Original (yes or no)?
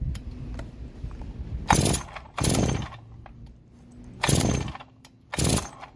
yes